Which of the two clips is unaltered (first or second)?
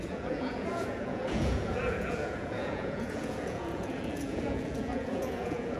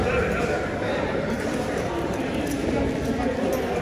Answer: second